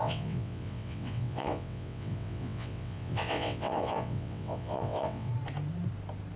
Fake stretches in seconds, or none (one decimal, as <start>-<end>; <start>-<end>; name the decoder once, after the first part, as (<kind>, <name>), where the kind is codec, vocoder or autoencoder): 0.0-5.3 (vocoder, WaveNeXt)